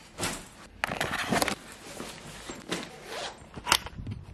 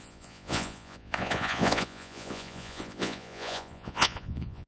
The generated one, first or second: second